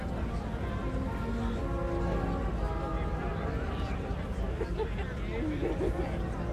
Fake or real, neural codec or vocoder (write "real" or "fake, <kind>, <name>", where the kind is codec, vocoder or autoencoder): real